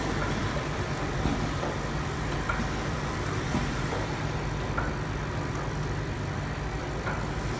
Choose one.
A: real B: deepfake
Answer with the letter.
B